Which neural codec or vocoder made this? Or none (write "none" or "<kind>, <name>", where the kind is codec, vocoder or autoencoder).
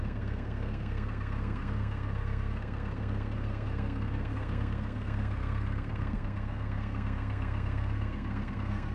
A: codec, SNAC